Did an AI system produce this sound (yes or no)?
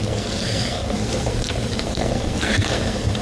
yes